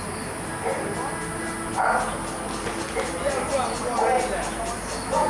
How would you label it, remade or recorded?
recorded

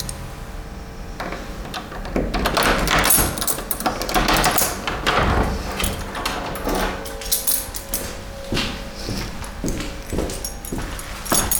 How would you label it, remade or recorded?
recorded